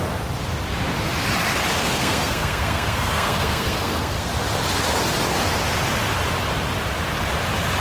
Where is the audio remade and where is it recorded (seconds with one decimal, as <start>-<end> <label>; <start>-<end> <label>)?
0.0-1.9 recorded; 1.9-4.3 remade; 4.3-7.8 recorded